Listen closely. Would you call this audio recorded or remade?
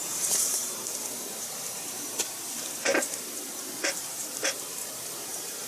remade